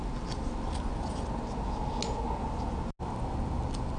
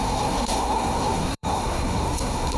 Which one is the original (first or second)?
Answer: first